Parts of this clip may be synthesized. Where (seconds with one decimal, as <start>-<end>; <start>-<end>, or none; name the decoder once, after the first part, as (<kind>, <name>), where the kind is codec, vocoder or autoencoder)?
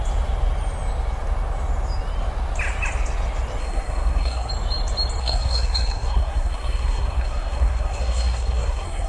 3.6-4.5 (codec, SNAC); 5.2-9.1